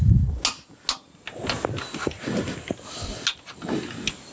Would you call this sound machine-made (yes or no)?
no